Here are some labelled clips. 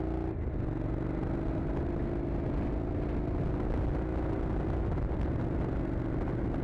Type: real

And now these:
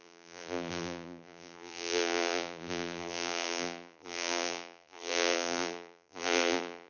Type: fake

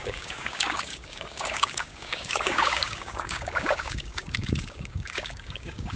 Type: fake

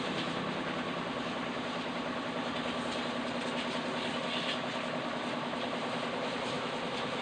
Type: real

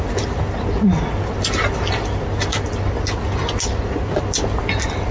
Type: real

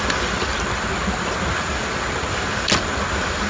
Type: real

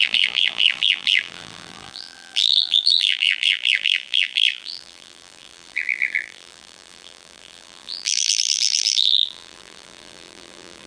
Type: fake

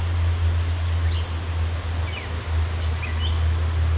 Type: real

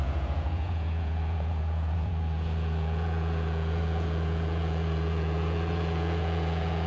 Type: fake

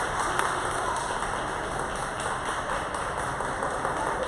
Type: real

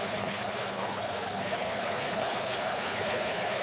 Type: fake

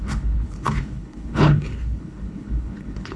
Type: fake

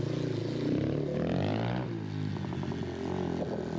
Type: real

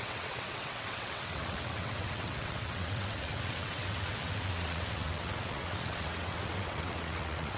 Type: fake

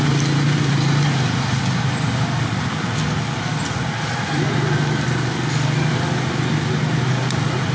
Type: real